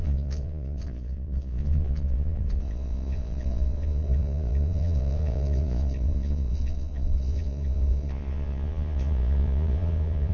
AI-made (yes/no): yes